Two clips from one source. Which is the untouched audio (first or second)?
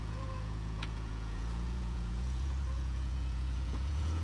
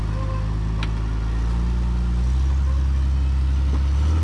second